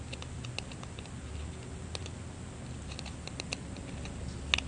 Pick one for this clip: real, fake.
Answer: real